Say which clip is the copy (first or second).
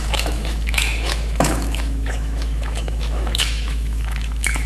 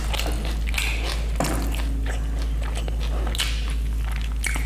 first